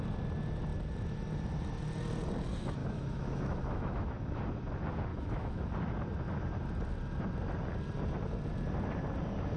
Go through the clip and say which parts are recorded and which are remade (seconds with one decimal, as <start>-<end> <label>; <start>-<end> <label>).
0.0-2.8 recorded; 2.8-4.4 remade; 4.4-5.1 recorded; 5.1-5.7 remade; 5.7-9.6 recorded